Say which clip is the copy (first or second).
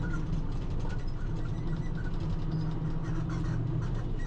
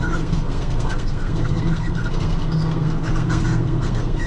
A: second